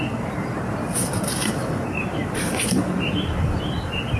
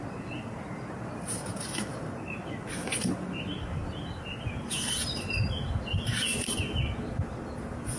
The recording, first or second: second